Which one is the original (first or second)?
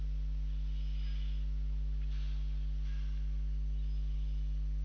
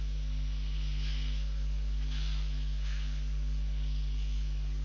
first